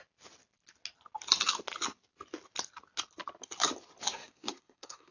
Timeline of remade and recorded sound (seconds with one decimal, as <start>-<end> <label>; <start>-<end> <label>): 0.0-4.1 recorded; 4.1-5.1 remade